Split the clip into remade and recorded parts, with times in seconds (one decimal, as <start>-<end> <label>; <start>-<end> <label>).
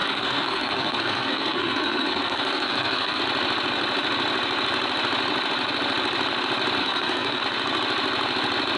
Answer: 0.0-3.2 remade; 3.2-6.8 recorded; 6.8-7.4 remade; 7.4-8.8 recorded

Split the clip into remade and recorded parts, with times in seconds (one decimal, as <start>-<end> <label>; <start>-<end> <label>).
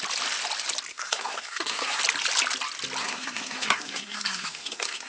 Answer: 0.0-0.9 recorded; 0.9-2.0 remade; 2.0-3.0 recorded; 3.0-5.1 remade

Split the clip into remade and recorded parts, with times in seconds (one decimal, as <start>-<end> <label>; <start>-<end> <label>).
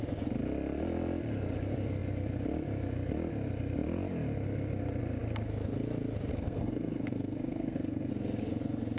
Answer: 0.0-6.3 recorded; 6.3-8.1 remade; 8.1-9.0 recorded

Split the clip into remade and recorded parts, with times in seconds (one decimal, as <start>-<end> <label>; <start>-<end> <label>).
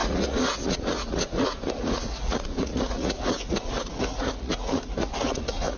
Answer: 0.0-5.8 remade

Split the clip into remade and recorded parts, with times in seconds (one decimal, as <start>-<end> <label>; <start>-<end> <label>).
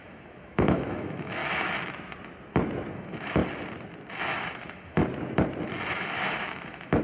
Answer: 0.0-1.4 remade; 1.4-2.9 recorded; 2.9-3.4 remade; 3.4-4.2 recorded; 4.2-5.0 remade; 5.0-5.9 recorded; 5.9-7.0 remade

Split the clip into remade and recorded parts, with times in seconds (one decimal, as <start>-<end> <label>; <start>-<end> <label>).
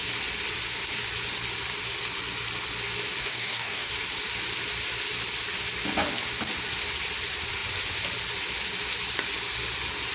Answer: 0.0-3.2 recorded; 3.2-3.9 remade; 3.9-10.1 recorded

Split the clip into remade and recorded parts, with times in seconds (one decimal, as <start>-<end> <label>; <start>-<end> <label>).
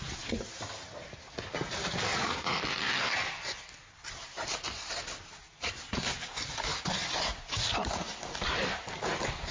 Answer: 0.0-2.1 recorded; 2.1-2.6 remade; 2.6-9.5 recorded